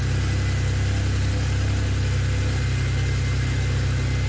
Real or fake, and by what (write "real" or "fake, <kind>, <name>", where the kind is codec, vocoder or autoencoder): real